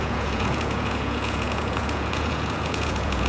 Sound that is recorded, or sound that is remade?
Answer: remade